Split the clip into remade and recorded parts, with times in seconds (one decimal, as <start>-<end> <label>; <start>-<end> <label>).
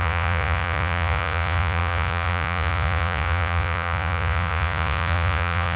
0.0-5.8 remade